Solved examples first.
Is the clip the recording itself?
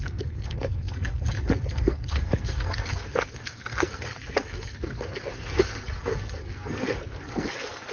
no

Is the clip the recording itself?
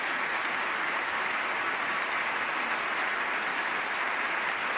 yes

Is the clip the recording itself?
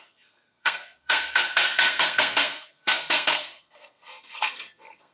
no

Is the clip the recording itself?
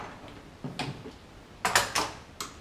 yes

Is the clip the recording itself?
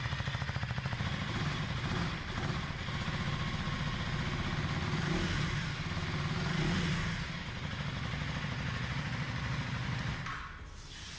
yes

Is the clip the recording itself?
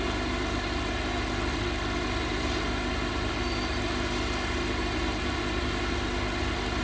yes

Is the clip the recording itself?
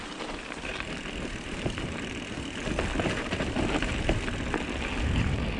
yes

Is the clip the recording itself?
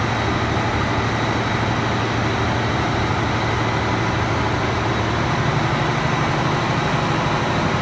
yes